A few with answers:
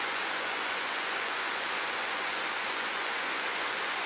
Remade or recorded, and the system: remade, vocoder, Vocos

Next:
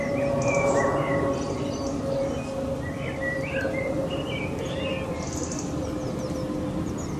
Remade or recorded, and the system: recorded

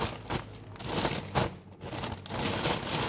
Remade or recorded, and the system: recorded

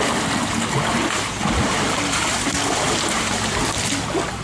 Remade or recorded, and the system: recorded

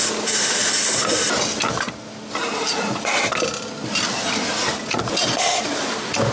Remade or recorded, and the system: recorded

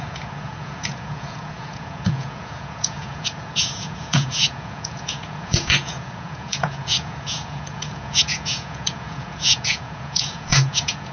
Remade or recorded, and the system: remade, vocoder, Vocos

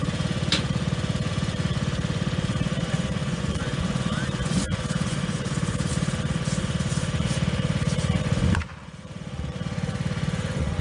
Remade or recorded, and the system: remade, vocoder, Vocos